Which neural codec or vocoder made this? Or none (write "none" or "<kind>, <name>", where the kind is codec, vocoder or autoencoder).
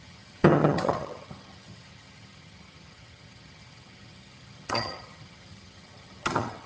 vocoder, HiFi-GAN